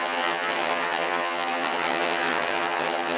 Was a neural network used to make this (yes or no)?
yes